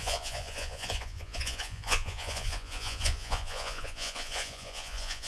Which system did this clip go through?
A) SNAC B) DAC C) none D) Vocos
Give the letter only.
D